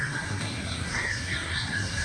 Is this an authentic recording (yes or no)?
no